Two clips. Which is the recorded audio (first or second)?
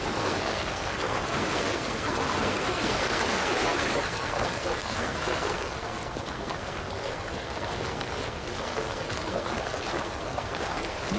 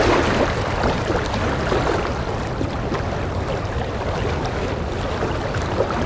second